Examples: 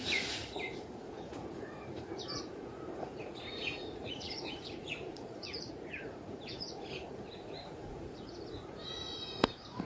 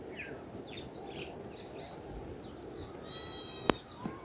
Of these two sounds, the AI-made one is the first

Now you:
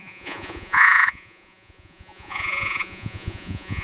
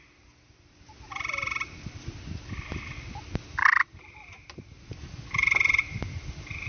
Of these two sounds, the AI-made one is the first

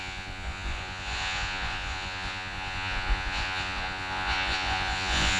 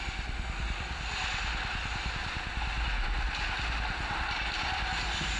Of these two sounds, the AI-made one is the first